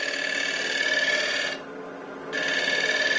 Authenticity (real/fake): real